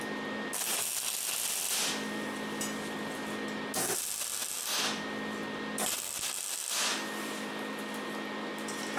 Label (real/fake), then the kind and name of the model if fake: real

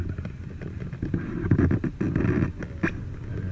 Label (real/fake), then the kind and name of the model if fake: real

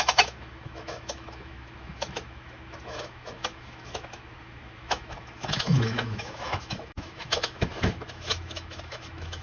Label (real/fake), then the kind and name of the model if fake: fake, autoencoder, DAC-VAE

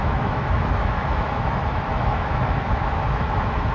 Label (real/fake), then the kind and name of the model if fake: fake, autoencoder, DAC-VAE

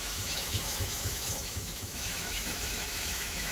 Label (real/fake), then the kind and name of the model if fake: fake, autoencoder, DAC-VAE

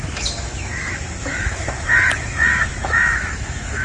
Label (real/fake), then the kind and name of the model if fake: fake, autoencoder, DAC-VAE